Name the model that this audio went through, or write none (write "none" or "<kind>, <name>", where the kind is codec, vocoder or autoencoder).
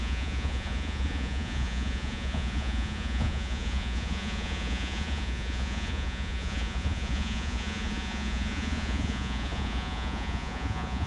vocoder, Vocos